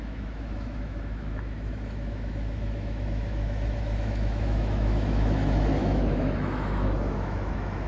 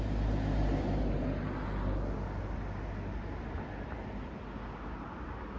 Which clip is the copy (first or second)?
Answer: first